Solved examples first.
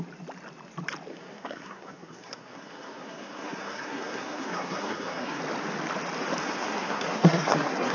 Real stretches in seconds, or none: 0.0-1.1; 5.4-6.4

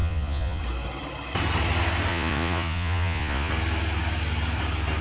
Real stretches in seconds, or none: 0.6-2.1; 3.5-5.0

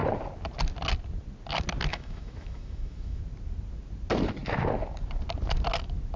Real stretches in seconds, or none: 0.0-1.9; 3.2-6.2